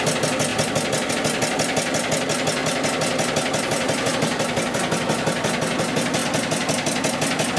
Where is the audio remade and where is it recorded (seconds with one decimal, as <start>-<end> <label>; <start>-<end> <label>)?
0.0-7.6 recorded